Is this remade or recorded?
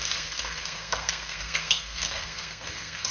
remade